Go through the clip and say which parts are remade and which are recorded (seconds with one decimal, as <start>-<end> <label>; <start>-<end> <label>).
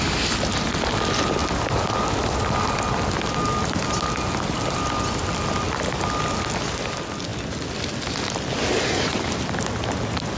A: 0.0-10.4 recorded